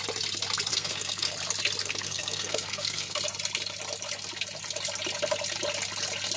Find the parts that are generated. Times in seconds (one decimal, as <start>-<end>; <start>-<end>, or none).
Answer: 0.7-1.3; 1.8-3.2